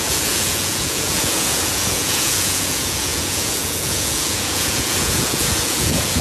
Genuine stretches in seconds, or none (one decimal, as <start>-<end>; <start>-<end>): none